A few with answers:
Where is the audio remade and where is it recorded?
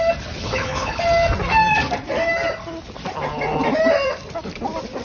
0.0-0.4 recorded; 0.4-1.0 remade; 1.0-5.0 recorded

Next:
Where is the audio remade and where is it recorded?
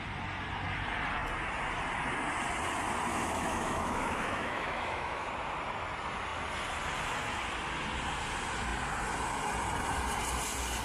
0.0-3.1 recorded; 3.1-5.3 remade; 5.3-10.8 recorded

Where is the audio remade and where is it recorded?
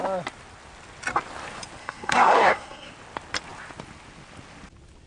0.0-1.8 recorded; 1.8-2.9 remade; 2.9-5.1 recorded